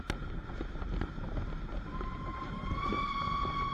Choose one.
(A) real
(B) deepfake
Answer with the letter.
A